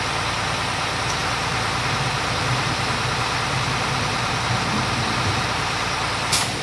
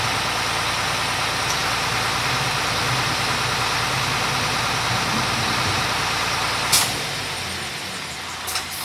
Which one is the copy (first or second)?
first